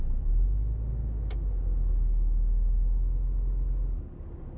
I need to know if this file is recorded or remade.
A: recorded